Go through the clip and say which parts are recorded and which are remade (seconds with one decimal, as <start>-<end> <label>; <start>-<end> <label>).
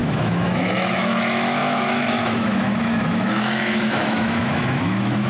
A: 0.0-5.3 remade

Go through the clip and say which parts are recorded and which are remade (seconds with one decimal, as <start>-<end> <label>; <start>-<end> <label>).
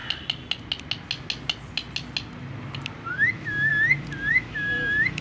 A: 0.0-3.1 recorded; 3.1-3.7 remade; 3.7-4.3 recorded; 4.3-5.2 remade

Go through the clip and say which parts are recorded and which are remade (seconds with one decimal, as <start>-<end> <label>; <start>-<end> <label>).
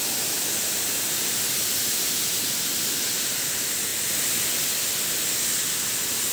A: 0.0-6.3 recorded